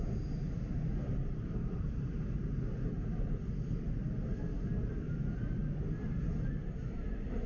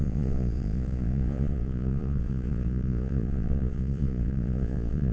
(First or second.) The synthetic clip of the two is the second